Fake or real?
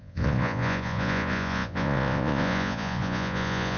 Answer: fake